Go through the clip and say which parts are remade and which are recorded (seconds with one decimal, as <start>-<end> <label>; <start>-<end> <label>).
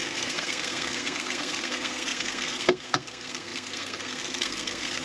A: 0.0-5.0 remade